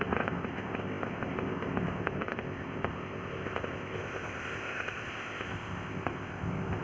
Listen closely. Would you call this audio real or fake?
fake